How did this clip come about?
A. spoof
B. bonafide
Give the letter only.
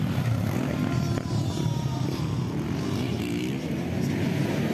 B